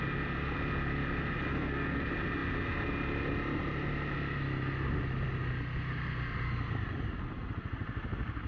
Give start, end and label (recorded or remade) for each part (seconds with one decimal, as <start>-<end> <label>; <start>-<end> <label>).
0.0-1.5 recorded; 1.5-2.0 remade; 2.0-8.5 recorded